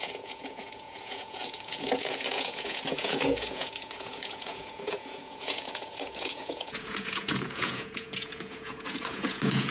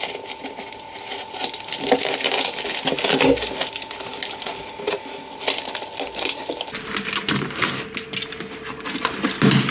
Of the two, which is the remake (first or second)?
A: first